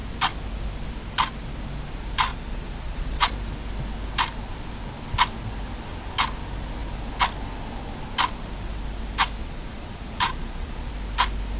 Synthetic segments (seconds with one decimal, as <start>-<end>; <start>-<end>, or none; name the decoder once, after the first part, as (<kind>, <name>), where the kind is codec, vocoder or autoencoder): 2.3-3.3 (vocoder, Vocos); 9.4-10.9